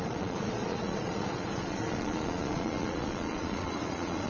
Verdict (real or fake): fake